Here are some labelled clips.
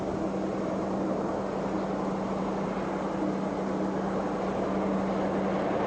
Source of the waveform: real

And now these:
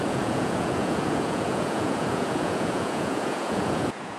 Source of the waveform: fake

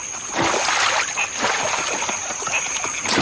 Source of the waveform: real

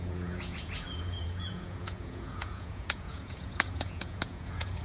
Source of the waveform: fake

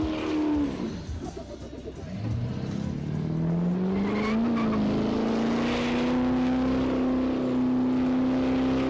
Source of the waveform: real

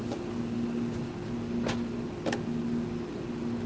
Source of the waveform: real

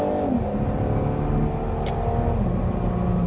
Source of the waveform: real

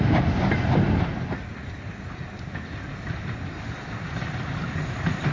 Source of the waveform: real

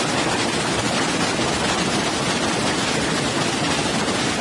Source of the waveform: real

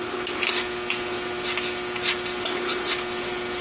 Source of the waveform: real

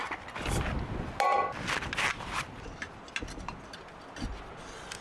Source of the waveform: real